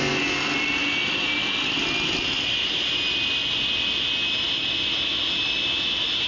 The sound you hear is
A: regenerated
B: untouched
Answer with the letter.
B